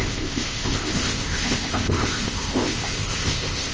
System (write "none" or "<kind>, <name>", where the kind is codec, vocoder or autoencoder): codec, ZipCodec